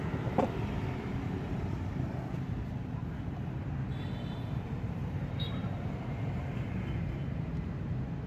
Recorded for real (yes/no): no